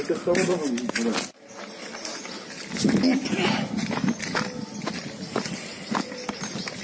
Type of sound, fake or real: real